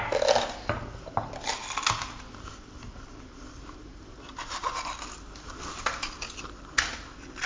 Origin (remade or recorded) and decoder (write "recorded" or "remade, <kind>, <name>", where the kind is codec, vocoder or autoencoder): recorded